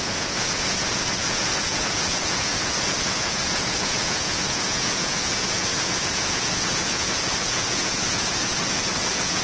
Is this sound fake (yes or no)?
yes